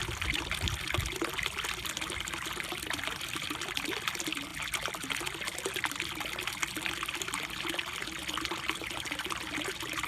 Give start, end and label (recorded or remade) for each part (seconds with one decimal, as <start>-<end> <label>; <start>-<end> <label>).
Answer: 0.0-10.1 recorded